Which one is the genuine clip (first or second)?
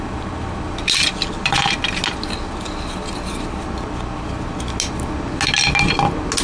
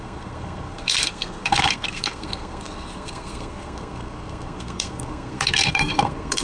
first